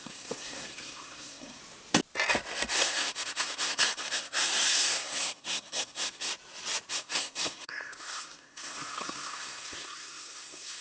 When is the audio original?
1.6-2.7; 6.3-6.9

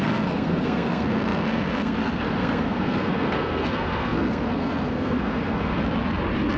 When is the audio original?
5.8-6.6

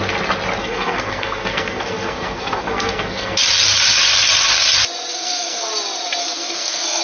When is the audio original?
0.0-0.6; 3.4-5.1; 5.7-6.2

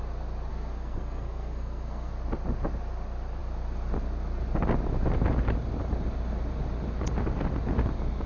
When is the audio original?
0.0-0.5; 2.1-8.3

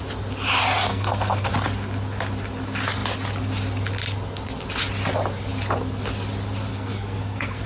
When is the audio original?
0.0-0.9; 1.5-6.7

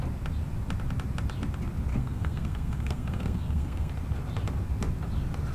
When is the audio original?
0.0-1.9; 3.9-5.5

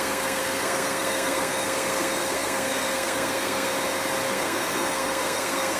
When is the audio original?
3.7-4.3